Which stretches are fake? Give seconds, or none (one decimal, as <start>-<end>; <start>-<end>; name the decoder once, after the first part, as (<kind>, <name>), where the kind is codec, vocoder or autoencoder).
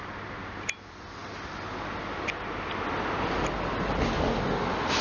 none